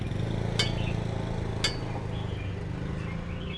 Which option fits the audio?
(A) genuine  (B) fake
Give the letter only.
A